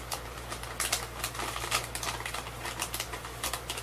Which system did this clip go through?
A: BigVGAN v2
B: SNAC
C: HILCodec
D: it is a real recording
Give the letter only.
D